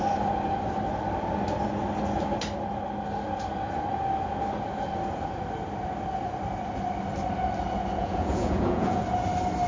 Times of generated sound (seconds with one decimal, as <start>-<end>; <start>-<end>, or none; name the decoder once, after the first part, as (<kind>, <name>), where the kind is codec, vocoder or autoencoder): 8.0-9.0 (vocoder, Vocos)